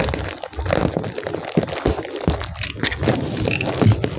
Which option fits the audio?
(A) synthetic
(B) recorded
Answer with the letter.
B